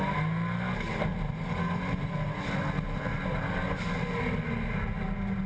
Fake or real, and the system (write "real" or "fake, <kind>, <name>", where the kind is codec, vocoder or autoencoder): real